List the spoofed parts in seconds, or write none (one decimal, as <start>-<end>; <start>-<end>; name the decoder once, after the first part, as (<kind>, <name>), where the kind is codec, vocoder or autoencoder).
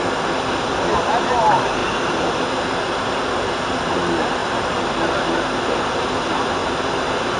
none